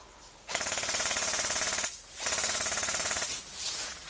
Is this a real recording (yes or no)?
no